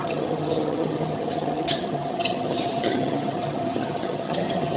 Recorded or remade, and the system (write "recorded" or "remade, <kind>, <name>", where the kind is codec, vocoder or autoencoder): remade, vocoder, HiFi-GAN